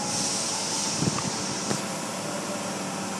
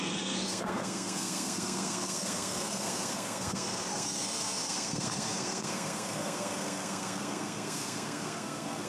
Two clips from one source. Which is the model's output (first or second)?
second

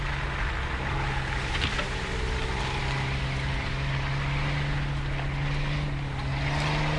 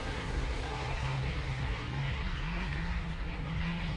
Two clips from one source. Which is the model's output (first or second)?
second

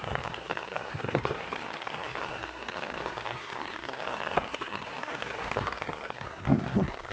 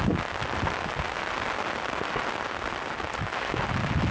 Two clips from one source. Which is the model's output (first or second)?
first